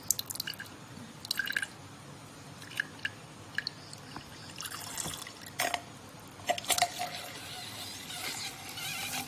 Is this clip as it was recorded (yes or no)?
yes